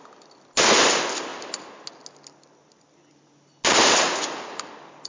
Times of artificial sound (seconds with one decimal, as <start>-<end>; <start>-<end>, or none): none